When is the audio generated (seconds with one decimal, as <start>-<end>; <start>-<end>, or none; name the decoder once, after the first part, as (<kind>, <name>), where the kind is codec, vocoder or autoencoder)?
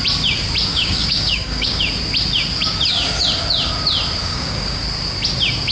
0.7-1.8 (codec, DAC); 4.2-4.8